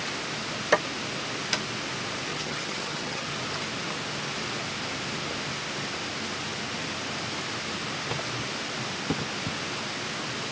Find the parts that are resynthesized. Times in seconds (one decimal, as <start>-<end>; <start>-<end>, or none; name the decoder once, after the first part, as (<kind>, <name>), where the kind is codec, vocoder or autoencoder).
2.3-3.3 (vocoder, HiFi-GAN)

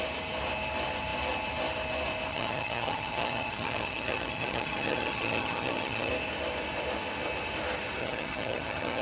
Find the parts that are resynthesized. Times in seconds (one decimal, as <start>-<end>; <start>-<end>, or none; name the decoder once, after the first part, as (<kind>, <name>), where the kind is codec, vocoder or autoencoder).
2.3-6.1 (vocoder, HiFi-GAN); 8.0-9.0

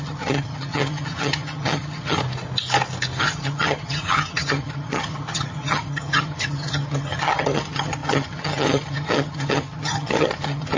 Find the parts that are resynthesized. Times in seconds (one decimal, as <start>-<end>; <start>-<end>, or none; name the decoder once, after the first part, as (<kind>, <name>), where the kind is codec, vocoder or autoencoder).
0.0-2.2 (vocoder, HiFi-GAN); 3.2-10.8

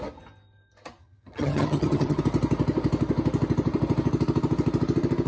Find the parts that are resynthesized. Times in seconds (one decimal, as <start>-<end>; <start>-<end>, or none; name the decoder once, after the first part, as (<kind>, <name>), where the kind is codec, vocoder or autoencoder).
1.0-2.2 (vocoder, HiFi-GAN)